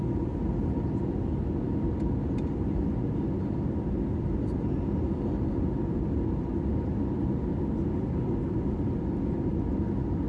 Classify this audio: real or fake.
real